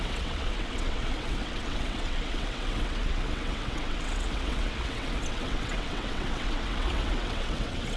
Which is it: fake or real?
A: fake